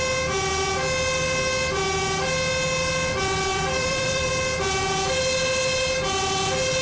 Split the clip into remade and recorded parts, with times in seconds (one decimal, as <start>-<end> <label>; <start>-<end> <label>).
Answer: 0.0-3.5 recorded; 3.5-4.3 remade; 4.3-6.8 recorded